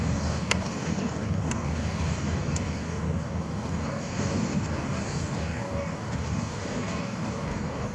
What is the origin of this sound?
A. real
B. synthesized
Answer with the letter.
B